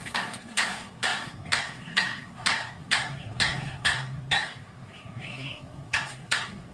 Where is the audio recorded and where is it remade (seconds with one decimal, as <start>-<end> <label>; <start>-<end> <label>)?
0.0-6.7 remade